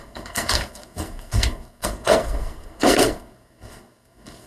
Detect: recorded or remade remade